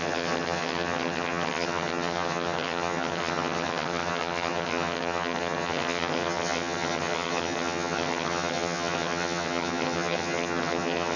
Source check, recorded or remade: remade